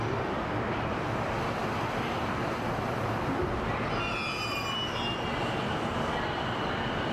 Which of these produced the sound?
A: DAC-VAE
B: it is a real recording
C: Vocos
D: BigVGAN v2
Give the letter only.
B